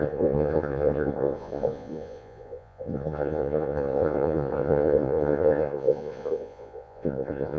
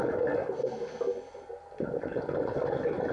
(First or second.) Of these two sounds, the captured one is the second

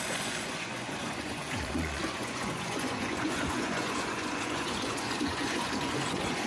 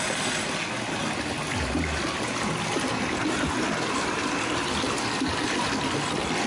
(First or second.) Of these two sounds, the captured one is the second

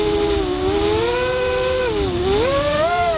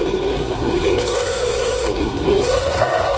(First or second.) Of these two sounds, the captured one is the first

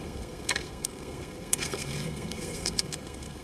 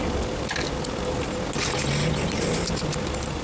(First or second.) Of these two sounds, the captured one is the second